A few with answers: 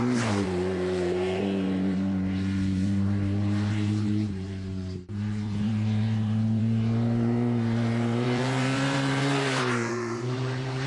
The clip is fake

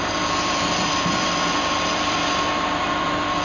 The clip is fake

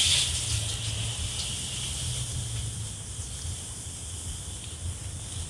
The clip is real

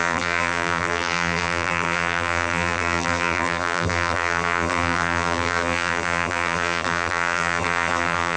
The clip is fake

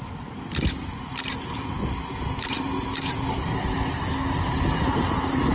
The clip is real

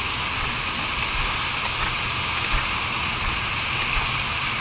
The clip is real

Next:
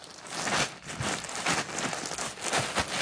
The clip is real